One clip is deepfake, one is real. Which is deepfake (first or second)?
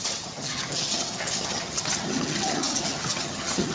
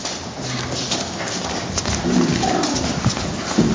first